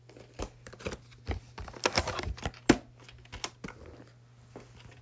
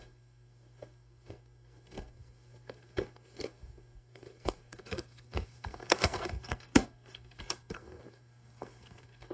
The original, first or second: first